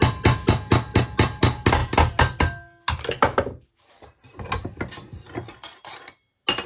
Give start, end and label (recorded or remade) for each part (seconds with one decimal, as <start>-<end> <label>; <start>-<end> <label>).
0.0-6.7 recorded